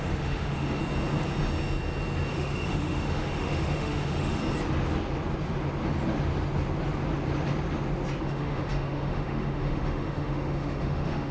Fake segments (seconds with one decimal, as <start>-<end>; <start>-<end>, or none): 0.0-0.8; 2.3-4.4; 8.2-11.3